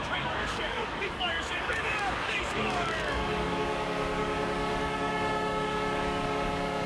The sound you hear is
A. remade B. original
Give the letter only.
A